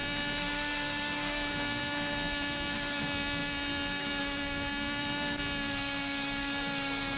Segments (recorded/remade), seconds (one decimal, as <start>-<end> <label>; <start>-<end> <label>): 0.0-7.2 remade